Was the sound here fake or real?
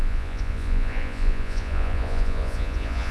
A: fake